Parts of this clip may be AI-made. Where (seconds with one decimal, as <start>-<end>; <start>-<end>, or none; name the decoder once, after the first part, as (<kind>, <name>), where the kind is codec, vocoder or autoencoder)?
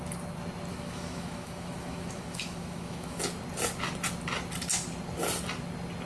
0.7-3.2 (autoencoder, DAC-VAE)